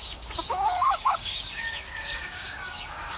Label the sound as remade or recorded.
remade